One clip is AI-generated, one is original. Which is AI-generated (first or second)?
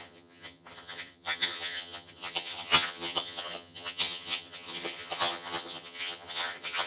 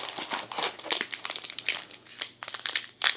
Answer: first